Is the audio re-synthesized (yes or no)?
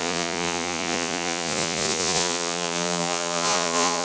yes